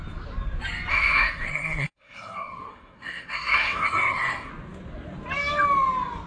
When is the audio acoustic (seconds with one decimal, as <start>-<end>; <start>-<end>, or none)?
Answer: 0.0-0.9; 4.5-6.3